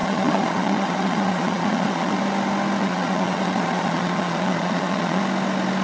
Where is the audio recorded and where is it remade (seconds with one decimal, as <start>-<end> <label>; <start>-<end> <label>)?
0.0-2.2 remade; 2.2-2.8 recorded; 2.8-5.2 remade; 5.2-5.8 recorded